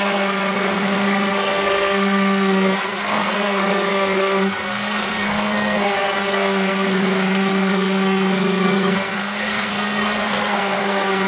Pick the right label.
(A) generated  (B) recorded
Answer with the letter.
A